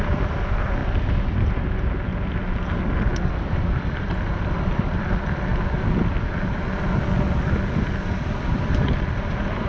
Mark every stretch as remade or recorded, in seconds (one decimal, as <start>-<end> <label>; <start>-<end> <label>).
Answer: 0.0-0.8 remade; 0.8-3.5 recorded; 3.5-5.5 remade; 5.5-8.5 recorded; 8.5-9.7 remade